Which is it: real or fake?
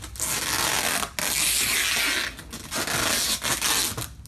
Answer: real